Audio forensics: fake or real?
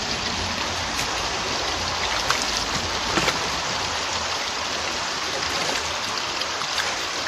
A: real